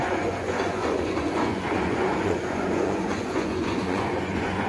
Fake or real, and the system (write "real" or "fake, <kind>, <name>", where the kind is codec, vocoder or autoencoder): fake, vocoder, Vocos